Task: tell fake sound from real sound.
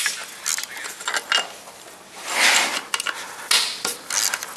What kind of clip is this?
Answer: real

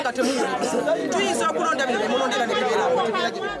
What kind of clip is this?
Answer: real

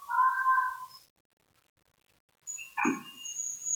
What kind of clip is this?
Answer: real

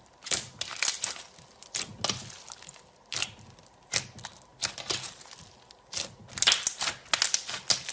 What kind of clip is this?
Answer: real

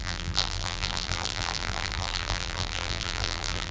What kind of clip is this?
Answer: fake